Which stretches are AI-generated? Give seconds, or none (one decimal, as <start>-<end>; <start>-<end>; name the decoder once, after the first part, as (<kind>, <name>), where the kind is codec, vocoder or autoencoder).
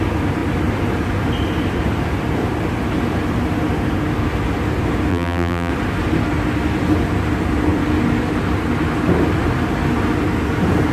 5.1-5.7 (vocoder, BigVGAN v2)